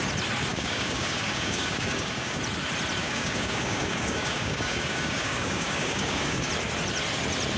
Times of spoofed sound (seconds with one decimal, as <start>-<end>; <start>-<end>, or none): 0.5-2.4; 3.0-6.5